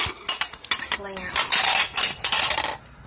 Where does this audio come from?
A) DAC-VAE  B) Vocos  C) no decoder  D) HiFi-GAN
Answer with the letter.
C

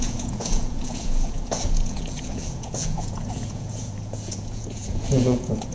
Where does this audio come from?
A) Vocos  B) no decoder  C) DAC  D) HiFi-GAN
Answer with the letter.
A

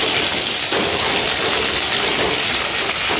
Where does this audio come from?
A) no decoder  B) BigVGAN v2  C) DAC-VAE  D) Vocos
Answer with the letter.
A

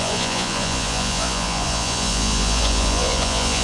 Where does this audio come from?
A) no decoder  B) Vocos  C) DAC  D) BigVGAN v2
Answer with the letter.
B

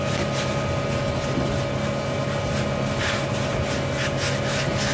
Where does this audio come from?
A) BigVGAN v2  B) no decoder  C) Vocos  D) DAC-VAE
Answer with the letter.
B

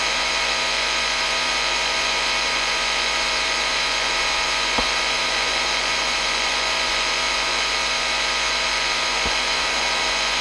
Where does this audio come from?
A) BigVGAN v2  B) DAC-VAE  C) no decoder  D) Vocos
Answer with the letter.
D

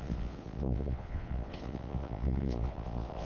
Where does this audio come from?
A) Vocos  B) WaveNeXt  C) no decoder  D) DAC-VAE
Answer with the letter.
A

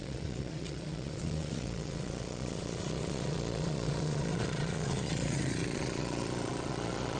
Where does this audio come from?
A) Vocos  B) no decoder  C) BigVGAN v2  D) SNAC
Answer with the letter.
A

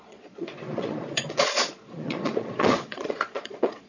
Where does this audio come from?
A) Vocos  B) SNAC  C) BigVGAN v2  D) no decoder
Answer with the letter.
A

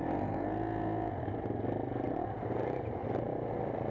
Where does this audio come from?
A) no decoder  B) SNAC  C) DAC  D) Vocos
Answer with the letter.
A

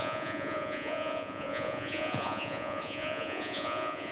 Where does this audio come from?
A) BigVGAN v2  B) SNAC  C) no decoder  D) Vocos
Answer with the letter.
D